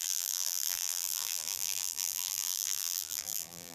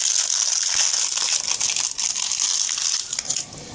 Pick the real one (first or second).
second